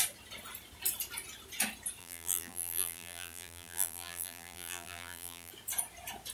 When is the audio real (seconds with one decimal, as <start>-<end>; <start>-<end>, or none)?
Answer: 0.0-2.0; 5.5-6.3